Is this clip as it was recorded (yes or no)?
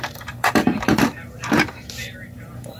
no